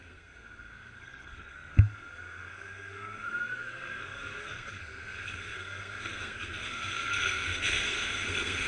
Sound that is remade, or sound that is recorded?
remade